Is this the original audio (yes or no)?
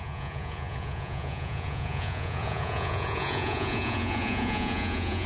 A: no